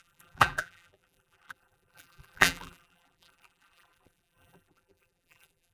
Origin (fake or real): fake